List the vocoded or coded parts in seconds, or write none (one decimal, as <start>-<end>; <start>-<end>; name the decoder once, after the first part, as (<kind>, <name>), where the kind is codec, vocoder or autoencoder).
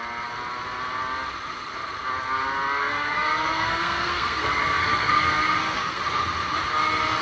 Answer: 2.8-6.0 (codec, SNAC)